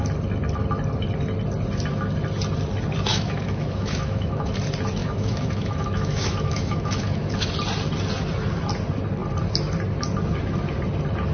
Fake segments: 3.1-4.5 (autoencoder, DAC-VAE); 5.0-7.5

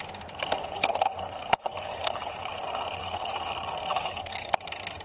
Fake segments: 0.6-2.5 (codec, HILCodec); 3.0-3.5; 3.9-4.5

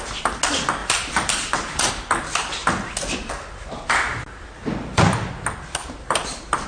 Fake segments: 0.8-1.9 (vocoder, BigVGAN v2)

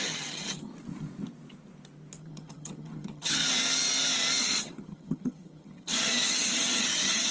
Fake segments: 0.0-0.7 (vocoder, HiFi-GAN); 2.2-3.4; 4.4-7.3

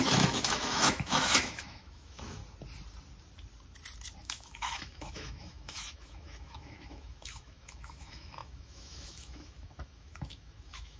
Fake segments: 0.0-2.4 (autoencoder, DAC-VAE); 4.2-11.0